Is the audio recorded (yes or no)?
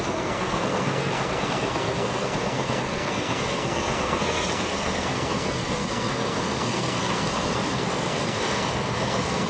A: no